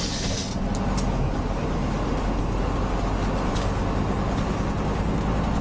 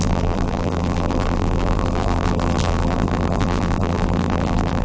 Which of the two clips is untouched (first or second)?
first